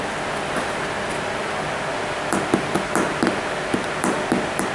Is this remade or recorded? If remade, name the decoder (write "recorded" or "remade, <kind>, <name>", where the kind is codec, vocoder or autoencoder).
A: recorded